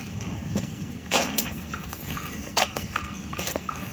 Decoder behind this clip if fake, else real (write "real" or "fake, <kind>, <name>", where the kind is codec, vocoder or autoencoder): fake, codec, SNAC